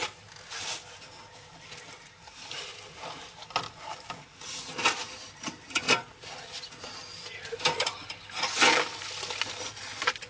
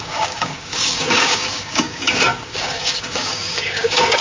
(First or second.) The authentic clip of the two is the first